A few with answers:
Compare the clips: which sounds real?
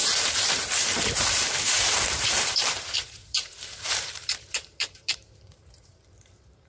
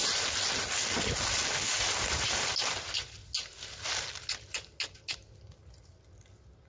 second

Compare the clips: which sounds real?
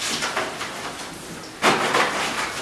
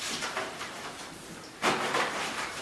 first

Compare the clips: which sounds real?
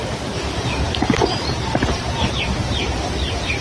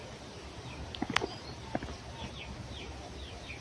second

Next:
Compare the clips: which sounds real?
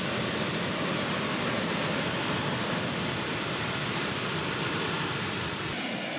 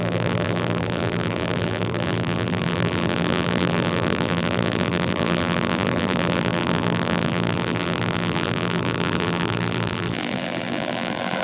first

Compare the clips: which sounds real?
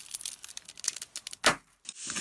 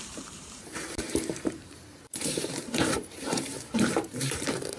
first